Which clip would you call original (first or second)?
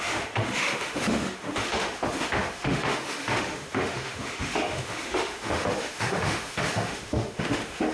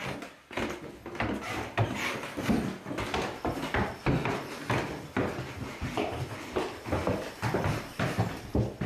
second